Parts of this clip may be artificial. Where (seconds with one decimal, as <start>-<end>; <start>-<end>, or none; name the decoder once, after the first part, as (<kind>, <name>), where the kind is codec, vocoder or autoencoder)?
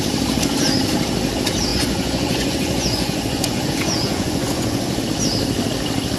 1.7-5.0 (vocoder, Vocos)